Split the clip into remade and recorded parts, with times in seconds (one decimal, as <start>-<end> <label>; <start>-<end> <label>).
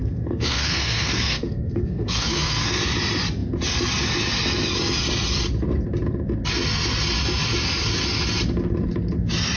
0.0-2.8 remade; 2.8-9.6 recorded